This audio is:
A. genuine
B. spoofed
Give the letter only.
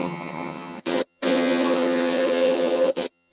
B